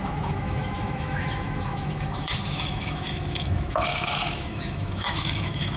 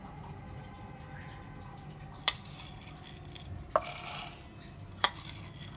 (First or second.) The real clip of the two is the second